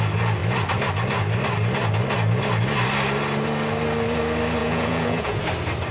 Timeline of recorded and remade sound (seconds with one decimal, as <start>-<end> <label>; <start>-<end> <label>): 0.0-4.6 recorded; 4.6-5.4 remade; 5.4-5.9 recorded